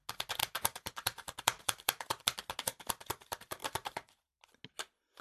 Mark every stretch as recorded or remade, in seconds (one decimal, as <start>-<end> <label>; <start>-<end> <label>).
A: 0.0-0.4 recorded; 0.4-2.2 remade; 2.2-3.6 recorded; 3.6-4.4 remade; 4.4-5.2 recorded